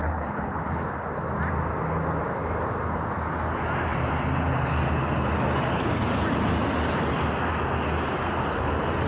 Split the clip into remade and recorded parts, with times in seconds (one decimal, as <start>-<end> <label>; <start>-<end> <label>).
0.0-0.6 remade; 0.6-9.1 recorded